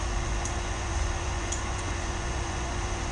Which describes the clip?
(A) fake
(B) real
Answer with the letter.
A